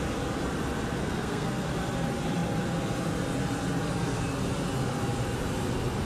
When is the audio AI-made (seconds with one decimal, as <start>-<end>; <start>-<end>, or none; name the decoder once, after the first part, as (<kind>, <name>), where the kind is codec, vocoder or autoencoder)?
1.0-1.7 (codec, SNAC)